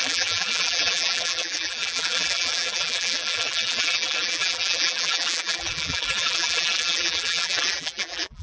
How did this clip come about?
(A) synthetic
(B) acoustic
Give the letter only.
A